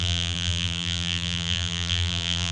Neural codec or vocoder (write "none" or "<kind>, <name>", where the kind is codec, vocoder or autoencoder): vocoder, BigVGAN v2